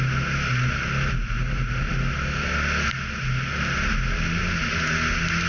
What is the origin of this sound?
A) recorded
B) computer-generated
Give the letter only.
A